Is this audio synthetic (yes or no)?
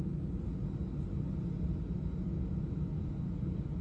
no